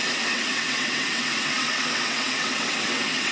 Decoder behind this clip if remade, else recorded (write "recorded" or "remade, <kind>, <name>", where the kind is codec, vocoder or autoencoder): remade, vocoder, WaveNeXt